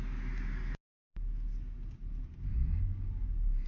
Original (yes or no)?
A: yes